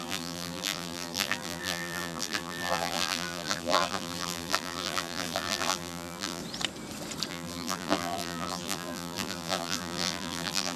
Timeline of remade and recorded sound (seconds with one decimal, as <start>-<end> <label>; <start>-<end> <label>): 0.0-6.4 remade; 6.4-7.3 recorded; 7.3-10.8 remade